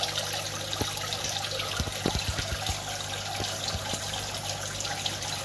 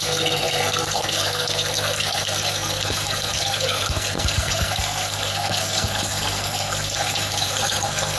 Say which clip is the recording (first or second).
first